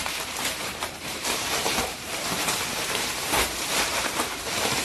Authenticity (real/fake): fake